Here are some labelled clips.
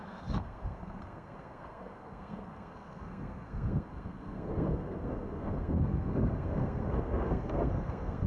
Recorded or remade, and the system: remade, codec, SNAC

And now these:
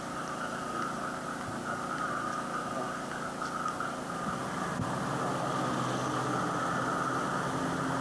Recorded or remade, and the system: recorded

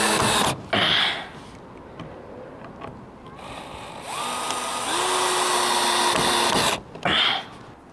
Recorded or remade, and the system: recorded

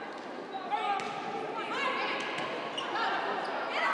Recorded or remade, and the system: recorded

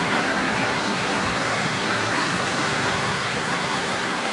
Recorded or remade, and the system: remade, codec, SNAC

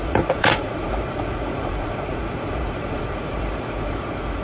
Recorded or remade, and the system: remade, vocoder, Vocos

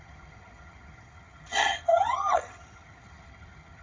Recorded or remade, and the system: remade, vocoder, HiFi-GAN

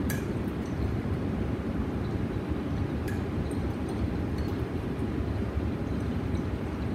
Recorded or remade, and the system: remade, vocoder, BigVGAN v2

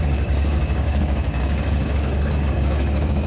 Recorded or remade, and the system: remade, codec, DAC